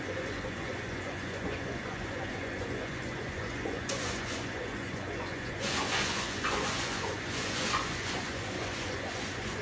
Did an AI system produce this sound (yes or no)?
yes